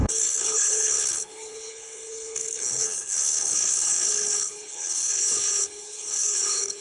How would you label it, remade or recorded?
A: remade